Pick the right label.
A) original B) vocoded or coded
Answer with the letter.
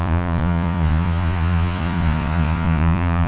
B